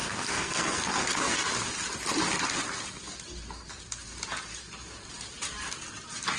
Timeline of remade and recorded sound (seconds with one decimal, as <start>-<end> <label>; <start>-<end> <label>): 0.0-1.5 remade; 1.5-6.4 recorded